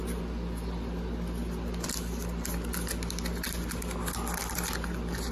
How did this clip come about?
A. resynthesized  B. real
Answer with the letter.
B